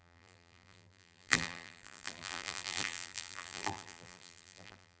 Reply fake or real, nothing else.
fake